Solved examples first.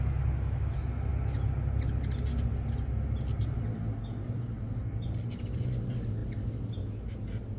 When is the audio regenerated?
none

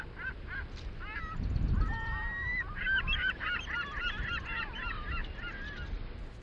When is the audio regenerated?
0.0-5.2 (vocoder, BigVGAN v2); 5.9-6.4

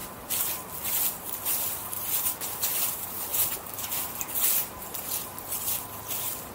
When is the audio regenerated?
0.9-6.5 (vocoder, BigVGAN v2)

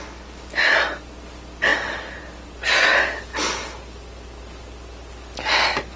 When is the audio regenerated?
none

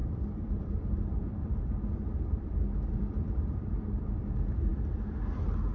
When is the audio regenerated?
0.0-4.7 (vocoder, BigVGAN v2)